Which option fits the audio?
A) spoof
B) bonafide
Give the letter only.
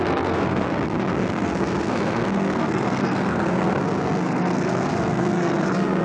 A